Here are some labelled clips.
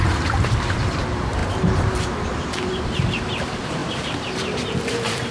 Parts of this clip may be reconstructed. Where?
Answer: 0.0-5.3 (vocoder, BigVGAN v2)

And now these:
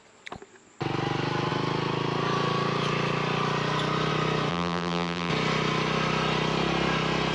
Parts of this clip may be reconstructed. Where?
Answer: 4.5-5.3 (vocoder, BigVGAN v2)

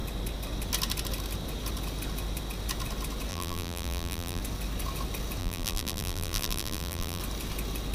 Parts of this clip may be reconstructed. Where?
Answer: 3.3-4.4 (vocoder, BigVGAN v2); 5.4-7.2

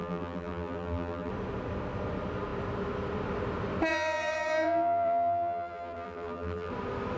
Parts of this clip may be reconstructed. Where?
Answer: 0.0-1.3 (vocoder, BigVGAN v2); 3.9-6.7

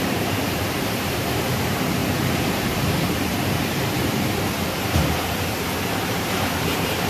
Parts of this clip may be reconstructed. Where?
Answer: 0.0-7.1 (vocoder, BigVGAN v2)

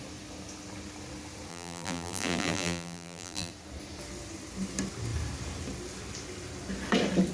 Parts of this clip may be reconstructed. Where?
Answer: 1.5-3.5 (vocoder, BigVGAN v2)

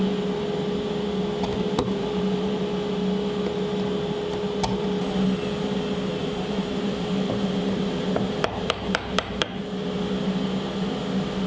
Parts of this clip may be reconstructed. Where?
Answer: 1.5-2.6 (vocoder, BigVGAN v2); 6.2-9.6